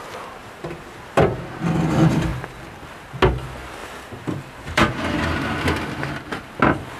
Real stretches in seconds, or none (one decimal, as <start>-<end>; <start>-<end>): 0.0-0.4; 1.2-3.8; 4.9-7.0